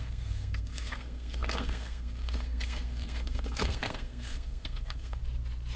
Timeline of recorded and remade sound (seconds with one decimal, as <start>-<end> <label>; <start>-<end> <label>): 0.0-5.2 remade; 5.2-5.8 recorded